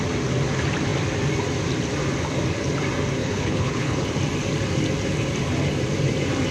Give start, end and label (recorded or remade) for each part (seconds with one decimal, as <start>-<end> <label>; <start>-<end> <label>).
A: 0.0-3.2 recorded; 3.2-4.1 remade; 4.1-6.5 recorded